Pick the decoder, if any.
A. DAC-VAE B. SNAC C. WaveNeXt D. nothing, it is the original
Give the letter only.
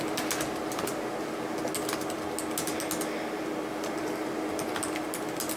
D